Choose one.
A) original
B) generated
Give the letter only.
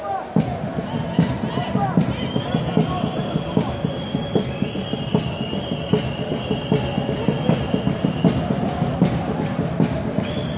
A